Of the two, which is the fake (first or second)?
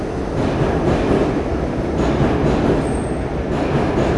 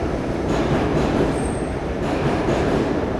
second